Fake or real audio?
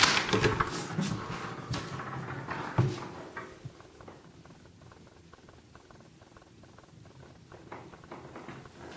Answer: real